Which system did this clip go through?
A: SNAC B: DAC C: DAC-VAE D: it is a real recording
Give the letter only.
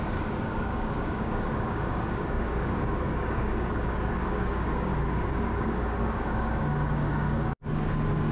B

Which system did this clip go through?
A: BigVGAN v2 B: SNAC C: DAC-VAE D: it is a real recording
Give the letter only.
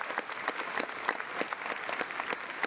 D